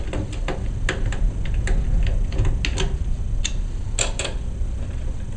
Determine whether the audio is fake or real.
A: real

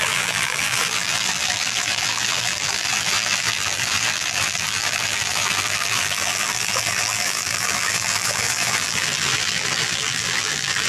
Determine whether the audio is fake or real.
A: fake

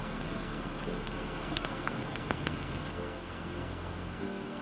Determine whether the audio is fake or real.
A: fake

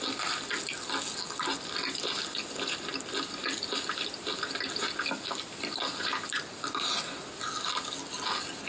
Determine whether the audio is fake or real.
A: real